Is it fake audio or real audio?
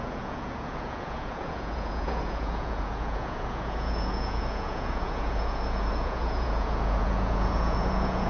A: fake